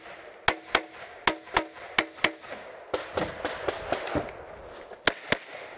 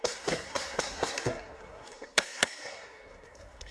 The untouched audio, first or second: first